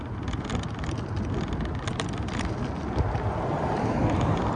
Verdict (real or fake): real